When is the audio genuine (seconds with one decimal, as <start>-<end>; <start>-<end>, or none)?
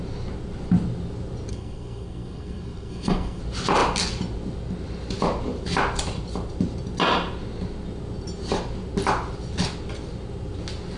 0.0-1.5; 3.4-11.0